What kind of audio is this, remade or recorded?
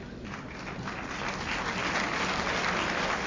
recorded